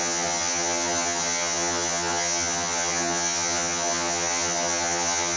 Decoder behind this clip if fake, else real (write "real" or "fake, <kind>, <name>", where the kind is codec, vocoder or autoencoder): fake, vocoder, HiFi-GAN